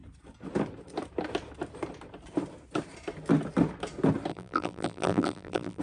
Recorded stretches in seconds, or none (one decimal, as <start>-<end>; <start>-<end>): 0.0-4.3